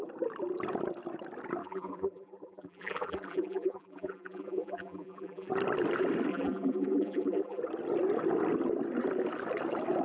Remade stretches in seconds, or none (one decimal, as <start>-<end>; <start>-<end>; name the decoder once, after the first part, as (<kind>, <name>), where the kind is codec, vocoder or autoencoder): 1.6-5.5 (vocoder, BigVGAN v2); 6.3-7.6